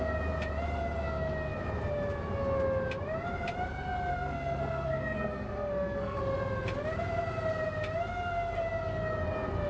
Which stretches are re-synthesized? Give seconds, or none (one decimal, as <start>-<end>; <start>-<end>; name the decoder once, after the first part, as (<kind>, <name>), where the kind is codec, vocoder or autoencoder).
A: 4.1-6.2 (codec, SNAC)